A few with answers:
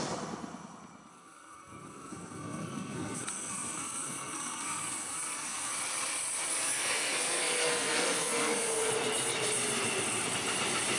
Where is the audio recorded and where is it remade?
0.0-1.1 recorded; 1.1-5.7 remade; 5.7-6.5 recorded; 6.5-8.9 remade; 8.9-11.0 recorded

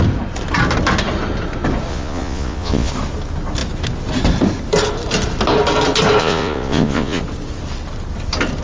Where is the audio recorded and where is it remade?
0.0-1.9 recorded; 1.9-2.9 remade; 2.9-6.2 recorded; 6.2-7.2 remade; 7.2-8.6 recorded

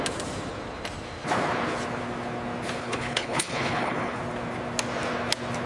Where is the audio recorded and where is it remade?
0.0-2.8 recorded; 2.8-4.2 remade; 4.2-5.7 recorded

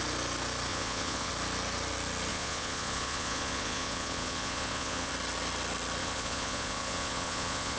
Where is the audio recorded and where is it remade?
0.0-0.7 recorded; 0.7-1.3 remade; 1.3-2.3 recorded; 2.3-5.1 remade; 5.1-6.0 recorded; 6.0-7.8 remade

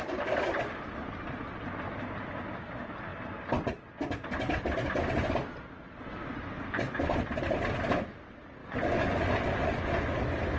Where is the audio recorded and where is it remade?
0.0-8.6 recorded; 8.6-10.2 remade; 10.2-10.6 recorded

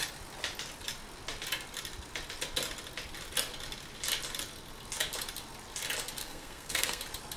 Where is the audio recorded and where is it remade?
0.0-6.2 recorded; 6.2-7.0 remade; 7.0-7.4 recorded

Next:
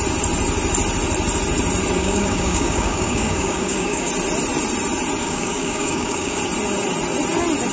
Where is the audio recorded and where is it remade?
0.0-2.0 recorded; 2.0-4.1 remade; 4.1-5.2 recorded; 5.2-6.4 remade; 6.4-7.7 recorded

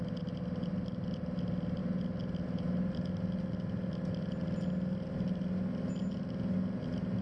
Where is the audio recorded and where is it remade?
0.0-7.2 recorded